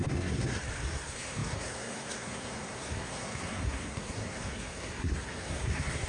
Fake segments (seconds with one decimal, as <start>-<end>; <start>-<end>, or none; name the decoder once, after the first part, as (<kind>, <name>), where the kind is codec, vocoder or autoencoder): 0.0-6.1 (codec, SNAC)